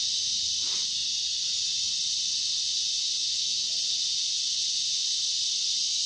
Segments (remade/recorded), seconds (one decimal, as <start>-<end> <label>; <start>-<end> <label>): 0.0-3.2 recorded; 3.2-3.7 remade; 3.7-6.1 recorded